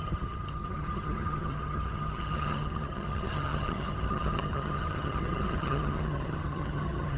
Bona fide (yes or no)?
no